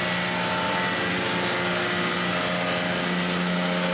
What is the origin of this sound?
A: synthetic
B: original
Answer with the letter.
B